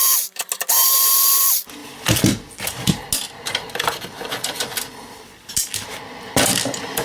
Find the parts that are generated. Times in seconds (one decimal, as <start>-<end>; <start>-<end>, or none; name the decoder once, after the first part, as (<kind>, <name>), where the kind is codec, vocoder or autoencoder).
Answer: none